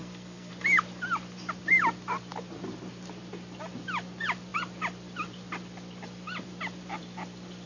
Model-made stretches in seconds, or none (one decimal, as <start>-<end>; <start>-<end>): 0.0-0.5